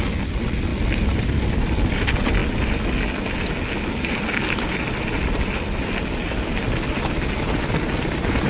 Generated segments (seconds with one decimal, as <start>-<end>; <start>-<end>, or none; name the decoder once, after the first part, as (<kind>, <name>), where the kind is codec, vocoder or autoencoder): none